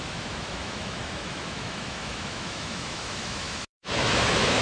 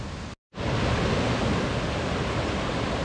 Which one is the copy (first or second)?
first